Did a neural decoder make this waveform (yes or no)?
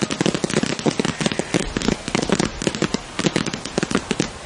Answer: no